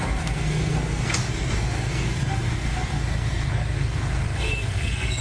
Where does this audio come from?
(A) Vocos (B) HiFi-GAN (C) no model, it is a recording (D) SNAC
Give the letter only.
D